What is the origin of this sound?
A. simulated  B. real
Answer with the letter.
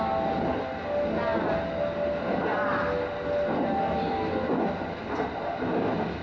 B